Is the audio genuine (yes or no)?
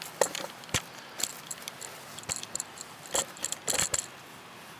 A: yes